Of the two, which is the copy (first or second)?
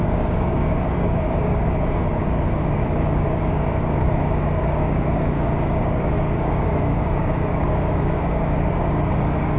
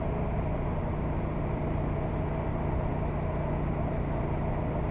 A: first